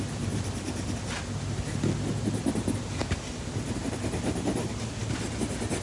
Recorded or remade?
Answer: recorded